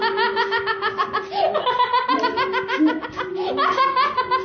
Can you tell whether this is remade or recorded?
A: recorded